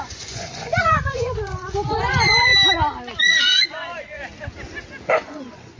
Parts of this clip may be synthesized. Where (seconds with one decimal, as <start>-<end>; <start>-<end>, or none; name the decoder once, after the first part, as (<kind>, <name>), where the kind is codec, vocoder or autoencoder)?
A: 0.0-2.5 (vocoder, Vocos); 3.2-4.2; 5.1-5.8